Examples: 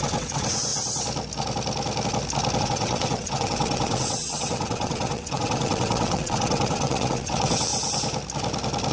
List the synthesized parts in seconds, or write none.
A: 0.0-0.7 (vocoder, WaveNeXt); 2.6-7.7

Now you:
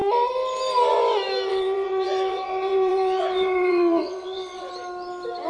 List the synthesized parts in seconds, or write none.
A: 1.5-4.7 (vocoder, WaveNeXt)

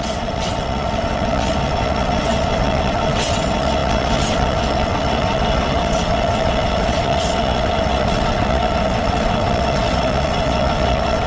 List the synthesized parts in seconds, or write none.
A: 0.0-11.3 (vocoder, WaveNeXt)

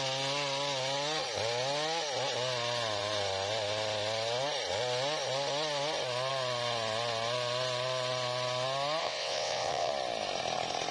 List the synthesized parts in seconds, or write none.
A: 9.0-9.9 (vocoder, WaveNeXt)

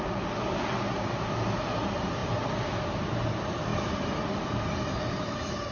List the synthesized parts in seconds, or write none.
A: none

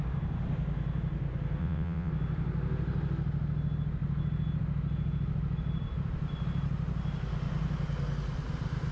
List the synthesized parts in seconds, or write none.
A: 1.6-2.1 (vocoder, WaveNeXt)

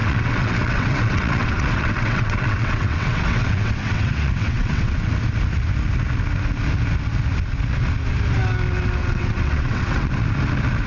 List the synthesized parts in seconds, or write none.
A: 0.0-5.1 (vocoder, WaveNeXt); 9.0-10.1